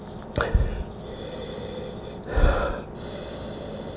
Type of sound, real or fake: real